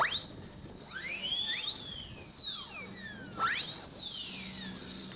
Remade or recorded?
recorded